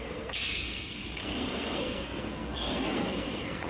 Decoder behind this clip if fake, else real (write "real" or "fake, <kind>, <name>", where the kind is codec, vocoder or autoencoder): fake, codec, SNAC